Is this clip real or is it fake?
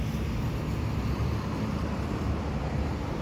real